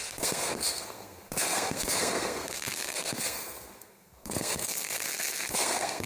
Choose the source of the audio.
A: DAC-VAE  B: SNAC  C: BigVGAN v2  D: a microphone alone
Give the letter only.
B